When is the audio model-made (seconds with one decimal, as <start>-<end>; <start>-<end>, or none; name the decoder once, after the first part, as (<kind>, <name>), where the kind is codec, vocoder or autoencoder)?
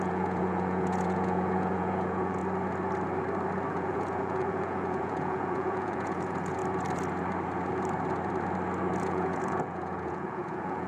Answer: 0.0-2.4 (vocoder, Vocos); 3.7-6.6; 9.0-10.9